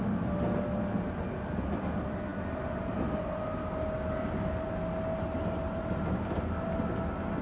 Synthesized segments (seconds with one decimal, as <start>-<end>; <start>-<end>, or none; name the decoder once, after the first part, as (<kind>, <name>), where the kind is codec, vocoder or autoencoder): none